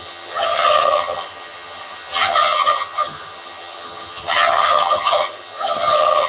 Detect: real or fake fake